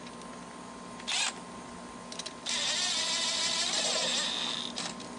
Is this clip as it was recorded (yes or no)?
yes